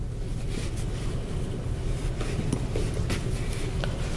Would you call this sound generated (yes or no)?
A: no